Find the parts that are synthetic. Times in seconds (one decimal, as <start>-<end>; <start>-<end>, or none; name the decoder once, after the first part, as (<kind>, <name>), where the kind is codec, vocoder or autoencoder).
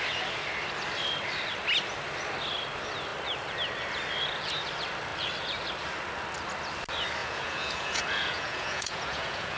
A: 7.2-9.6 (vocoder, Vocos)